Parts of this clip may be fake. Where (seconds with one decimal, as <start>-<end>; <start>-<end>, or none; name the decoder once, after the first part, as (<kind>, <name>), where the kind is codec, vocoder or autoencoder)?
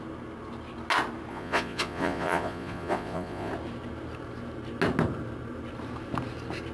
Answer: 1.3-3.5 (vocoder, Vocos)